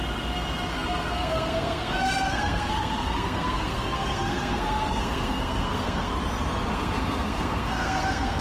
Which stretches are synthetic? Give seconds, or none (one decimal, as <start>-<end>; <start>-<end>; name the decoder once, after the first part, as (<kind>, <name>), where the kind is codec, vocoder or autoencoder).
0.7-6.1 (codec, SNAC); 6.7-8.4